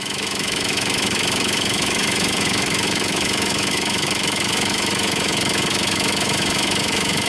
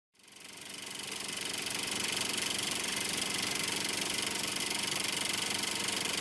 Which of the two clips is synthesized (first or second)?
first